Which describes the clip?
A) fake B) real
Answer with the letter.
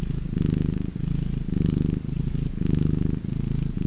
B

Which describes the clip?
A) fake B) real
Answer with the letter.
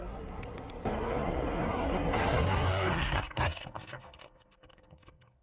A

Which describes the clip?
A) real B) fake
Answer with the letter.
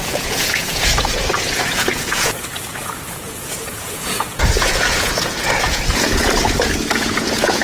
B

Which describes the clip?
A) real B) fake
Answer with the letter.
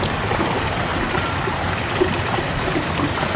A